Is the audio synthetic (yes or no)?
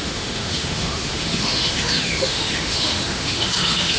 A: yes